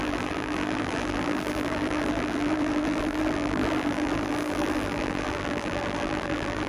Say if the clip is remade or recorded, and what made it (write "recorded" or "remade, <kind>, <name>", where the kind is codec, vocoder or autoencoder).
remade, vocoder, BigVGAN v2